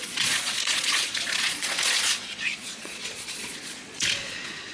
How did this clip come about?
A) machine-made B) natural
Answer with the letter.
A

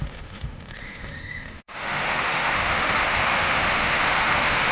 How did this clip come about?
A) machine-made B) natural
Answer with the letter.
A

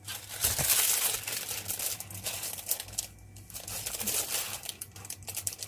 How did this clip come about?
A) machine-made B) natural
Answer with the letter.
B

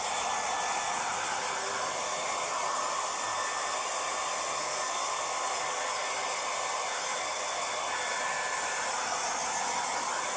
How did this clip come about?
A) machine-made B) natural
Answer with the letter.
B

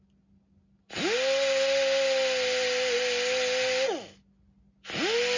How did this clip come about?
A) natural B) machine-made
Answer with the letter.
A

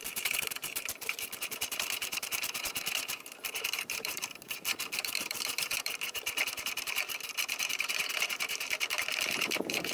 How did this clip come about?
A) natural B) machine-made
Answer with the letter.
B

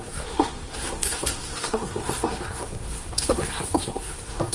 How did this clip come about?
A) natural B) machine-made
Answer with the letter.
B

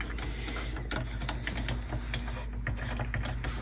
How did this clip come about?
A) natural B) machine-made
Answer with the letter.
A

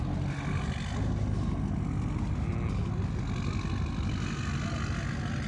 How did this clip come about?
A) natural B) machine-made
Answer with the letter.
A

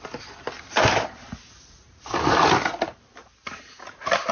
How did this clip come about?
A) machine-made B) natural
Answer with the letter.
B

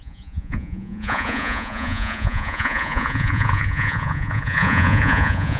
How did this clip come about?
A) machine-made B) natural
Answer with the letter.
A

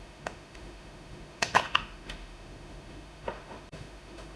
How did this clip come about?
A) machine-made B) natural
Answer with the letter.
A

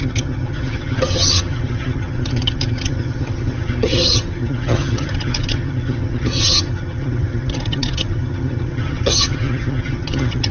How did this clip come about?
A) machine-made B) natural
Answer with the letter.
A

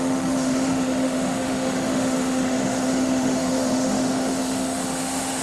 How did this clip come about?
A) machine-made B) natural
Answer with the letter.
A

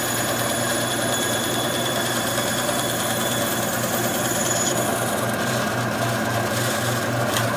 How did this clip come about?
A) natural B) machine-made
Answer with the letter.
B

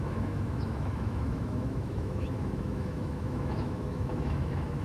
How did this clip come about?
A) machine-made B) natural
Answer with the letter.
A